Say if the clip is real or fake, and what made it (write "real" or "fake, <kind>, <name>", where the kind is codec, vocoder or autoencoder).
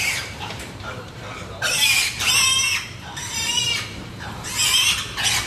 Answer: fake, vocoder, BigVGAN v2